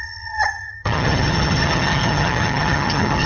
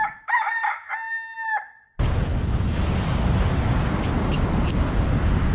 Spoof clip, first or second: first